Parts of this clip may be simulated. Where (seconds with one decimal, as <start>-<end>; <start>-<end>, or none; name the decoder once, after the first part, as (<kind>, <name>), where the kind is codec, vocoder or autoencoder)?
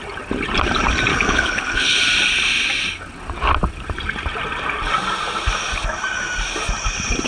1.1-2.0 (codec, HILCodec)